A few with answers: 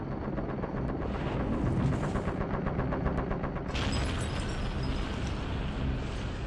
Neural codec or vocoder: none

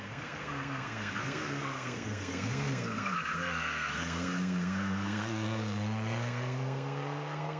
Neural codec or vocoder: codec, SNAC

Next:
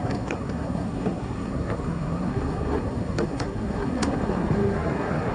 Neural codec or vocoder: codec, SNAC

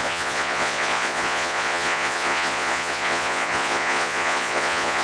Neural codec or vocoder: vocoder, Vocos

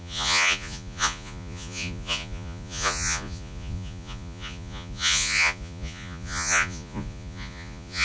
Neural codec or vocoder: vocoder, Vocos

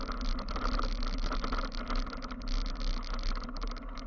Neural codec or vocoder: none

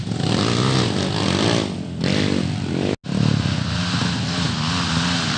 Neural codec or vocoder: none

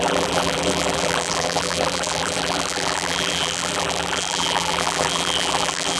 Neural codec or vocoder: vocoder, BigVGAN v2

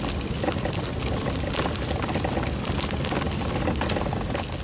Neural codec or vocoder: none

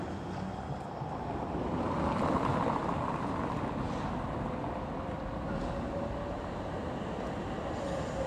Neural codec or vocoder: none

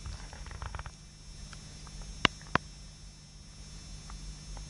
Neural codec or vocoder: none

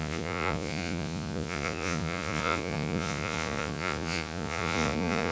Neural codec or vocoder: vocoder, Vocos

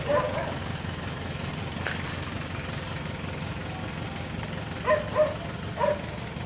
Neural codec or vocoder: none